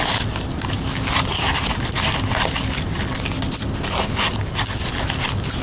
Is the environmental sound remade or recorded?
recorded